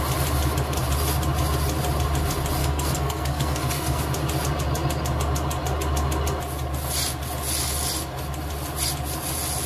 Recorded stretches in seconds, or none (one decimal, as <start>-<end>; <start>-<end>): 0.0-2.6; 4.0-9.7